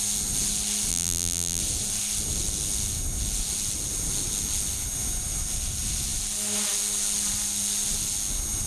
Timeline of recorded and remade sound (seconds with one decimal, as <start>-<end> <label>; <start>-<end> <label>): 0.0-0.9 recorded; 0.9-1.6 remade; 1.6-8.7 recorded